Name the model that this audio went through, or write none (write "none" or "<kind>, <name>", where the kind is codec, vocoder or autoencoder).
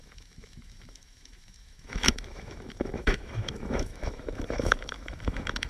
autoencoder, DAC-VAE